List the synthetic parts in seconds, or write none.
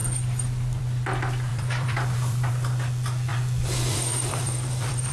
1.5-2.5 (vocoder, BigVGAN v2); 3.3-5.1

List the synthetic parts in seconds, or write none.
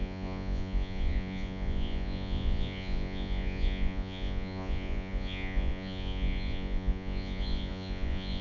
0.0-8.4 (vocoder, Vocos)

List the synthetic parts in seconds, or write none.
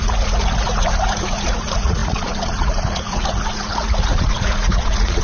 0.0-5.2 (vocoder, Vocos)